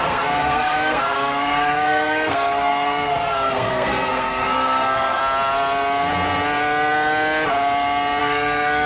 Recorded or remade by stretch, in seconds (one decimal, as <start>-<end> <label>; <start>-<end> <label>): 0.0-5.2 remade; 5.2-8.2 recorded; 8.2-8.9 remade